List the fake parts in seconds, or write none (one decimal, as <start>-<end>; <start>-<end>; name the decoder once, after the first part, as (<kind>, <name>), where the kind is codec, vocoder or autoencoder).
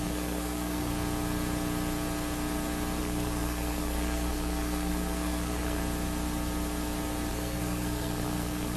0.0-0.9 (codec, SNAC); 3.0-5.8; 7.3-8.8